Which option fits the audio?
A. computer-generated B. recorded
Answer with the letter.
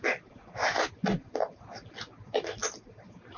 B